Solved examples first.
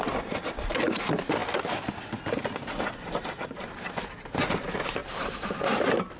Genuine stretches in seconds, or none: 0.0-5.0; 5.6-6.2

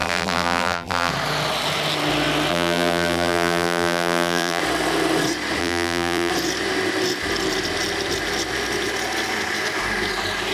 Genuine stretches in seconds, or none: 1.1-2.5; 4.6-5.6; 6.3-10.5